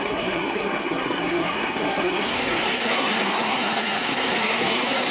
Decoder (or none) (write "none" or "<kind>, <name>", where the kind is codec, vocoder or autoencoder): codec, SNAC